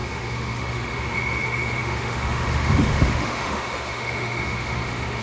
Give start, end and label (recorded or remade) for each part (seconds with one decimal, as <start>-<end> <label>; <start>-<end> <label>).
0.0-5.2 remade